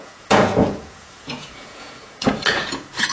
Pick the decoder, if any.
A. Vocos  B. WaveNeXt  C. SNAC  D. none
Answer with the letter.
A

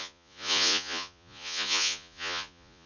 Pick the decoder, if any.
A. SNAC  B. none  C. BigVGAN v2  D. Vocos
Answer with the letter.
D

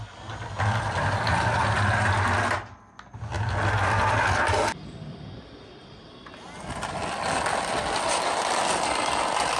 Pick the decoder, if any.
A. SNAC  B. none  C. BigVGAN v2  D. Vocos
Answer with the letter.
B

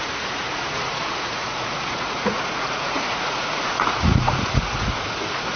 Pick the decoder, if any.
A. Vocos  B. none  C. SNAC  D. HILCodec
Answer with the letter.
A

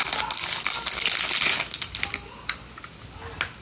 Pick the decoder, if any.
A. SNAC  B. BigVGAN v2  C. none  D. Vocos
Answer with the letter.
C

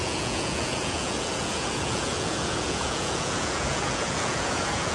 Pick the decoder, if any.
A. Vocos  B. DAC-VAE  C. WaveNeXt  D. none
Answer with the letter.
A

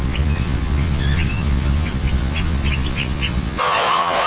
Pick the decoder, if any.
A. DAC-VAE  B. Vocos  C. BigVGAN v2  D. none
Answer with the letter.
B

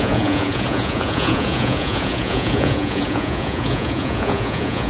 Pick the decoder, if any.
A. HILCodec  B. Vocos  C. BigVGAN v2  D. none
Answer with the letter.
B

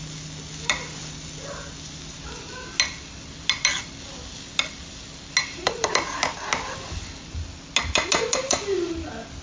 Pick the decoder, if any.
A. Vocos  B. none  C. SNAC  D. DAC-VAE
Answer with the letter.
B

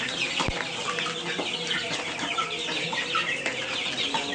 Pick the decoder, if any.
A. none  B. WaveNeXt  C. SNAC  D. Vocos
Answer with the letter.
A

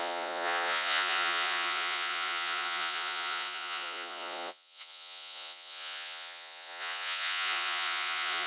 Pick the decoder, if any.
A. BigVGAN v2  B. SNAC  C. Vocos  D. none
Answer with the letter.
C